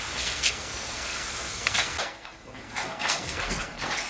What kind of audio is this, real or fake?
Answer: fake